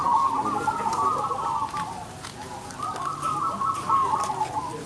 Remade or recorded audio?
recorded